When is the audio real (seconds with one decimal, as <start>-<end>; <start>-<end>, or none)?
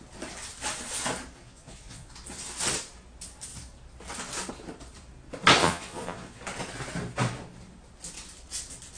0.0-1.4; 2.1-5.6; 6.4-9.0